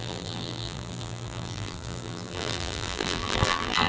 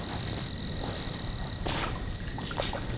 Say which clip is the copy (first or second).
first